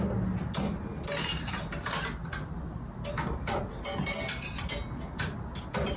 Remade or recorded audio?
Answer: recorded